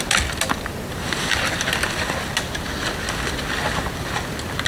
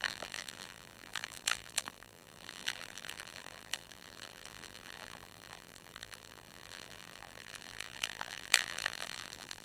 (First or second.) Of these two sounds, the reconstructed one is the second